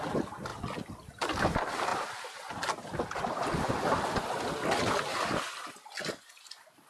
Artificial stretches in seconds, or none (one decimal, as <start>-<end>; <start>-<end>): none